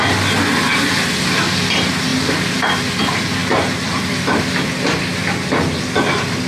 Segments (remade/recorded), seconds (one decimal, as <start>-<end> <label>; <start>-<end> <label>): 0.0-2.1 recorded; 2.1-2.7 remade; 2.7-3.4 recorded; 3.4-5.5 remade; 5.5-6.5 recorded